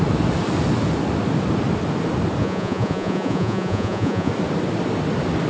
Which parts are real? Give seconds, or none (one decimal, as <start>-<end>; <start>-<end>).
0.0-2.4; 4.3-5.5